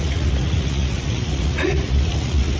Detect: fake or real fake